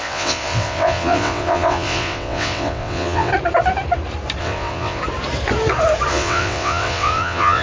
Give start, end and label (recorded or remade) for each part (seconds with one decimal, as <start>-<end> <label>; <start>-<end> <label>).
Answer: 0.0-3.3 remade; 3.3-4.4 recorded; 4.4-5.0 remade; 5.0-6.1 recorded; 6.1-7.6 remade